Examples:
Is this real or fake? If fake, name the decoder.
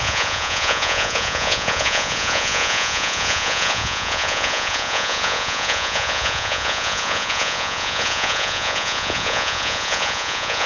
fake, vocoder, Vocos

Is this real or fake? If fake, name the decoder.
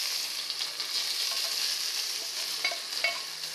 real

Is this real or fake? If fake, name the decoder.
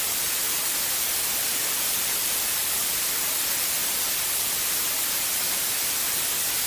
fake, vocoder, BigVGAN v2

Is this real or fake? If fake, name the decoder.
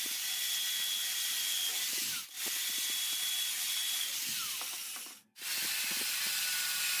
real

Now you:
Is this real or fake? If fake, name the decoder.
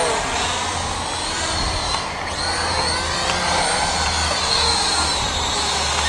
real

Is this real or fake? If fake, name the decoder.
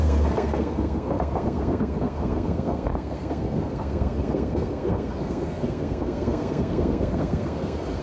fake, codec, SNAC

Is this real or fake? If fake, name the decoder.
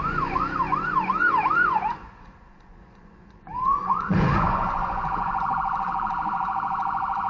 fake, vocoder, Vocos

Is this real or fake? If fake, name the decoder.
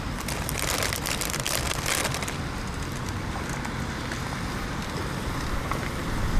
real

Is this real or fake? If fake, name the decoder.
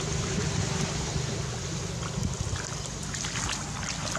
real